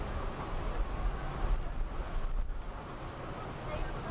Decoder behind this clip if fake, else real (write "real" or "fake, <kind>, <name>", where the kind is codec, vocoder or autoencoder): real